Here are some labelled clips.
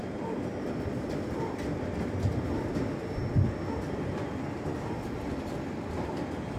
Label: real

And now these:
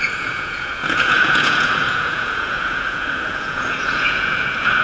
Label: fake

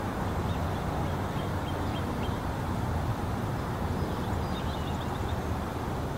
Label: real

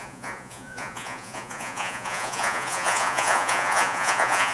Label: fake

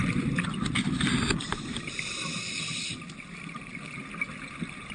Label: real